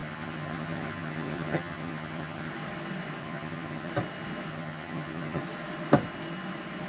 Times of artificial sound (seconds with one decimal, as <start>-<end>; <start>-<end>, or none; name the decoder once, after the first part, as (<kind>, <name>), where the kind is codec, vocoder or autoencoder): 0.0-2.5 (vocoder, HiFi-GAN); 3.2-3.9; 4.5-5.4